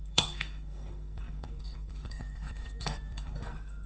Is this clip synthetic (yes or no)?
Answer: yes